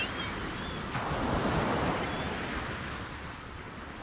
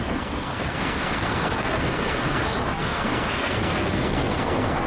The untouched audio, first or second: first